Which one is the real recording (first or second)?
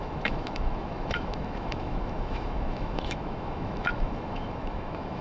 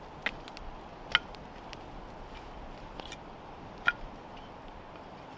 second